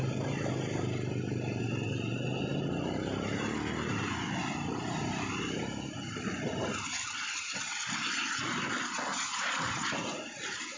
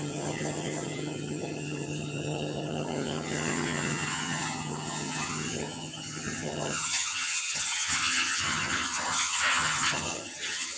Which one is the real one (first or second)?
first